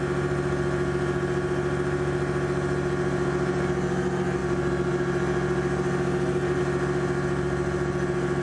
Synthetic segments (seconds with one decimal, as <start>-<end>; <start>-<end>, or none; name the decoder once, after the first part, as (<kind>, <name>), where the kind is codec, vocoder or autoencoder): none